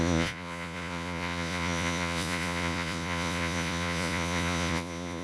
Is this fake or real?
fake